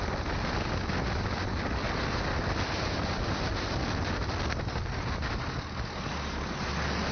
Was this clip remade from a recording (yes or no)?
no